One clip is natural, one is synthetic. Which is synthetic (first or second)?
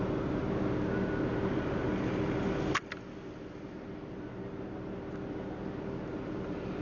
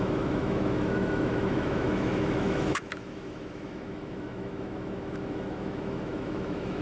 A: second